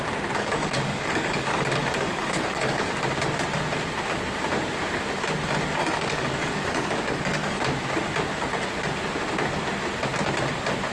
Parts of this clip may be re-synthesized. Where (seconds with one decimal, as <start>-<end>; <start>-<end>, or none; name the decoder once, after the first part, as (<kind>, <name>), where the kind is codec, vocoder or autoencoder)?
0.4-2.9 (codec, DAC); 5.8-7.6